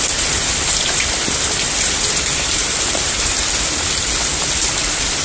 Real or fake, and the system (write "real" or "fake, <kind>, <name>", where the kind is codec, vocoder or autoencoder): fake, vocoder, BigVGAN v2